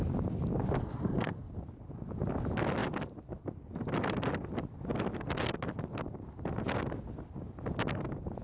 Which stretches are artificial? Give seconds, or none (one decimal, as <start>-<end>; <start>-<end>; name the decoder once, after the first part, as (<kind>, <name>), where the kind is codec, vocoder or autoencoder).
0.8-1.5 (codec, SNAC)